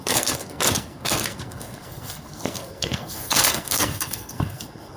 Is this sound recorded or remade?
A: remade